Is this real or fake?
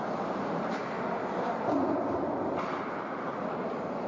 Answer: real